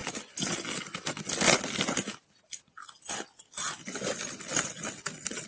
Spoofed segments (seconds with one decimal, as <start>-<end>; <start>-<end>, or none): none